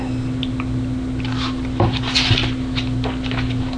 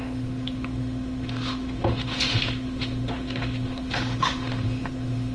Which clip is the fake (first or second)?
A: second